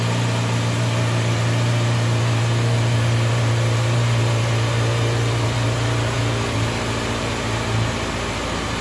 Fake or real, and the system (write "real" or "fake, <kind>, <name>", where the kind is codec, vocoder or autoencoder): real